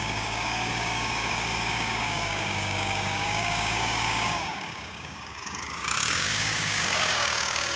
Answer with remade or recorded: remade